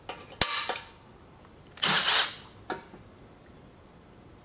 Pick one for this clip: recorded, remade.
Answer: recorded